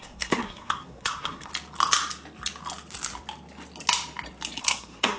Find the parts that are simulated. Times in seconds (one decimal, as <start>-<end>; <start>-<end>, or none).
0.0-1.5; 4.6-5.2